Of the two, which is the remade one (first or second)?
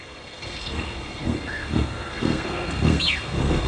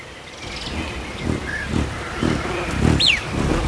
first